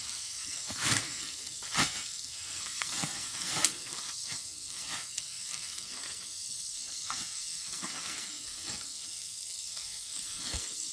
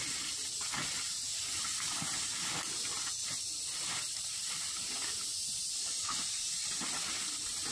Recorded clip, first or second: second